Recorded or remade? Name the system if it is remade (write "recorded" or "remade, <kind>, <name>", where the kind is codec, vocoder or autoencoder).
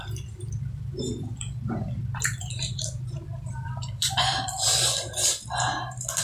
remade, vocoder, BigVGAN v2